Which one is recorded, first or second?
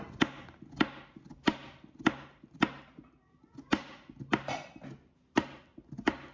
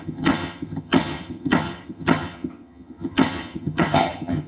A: first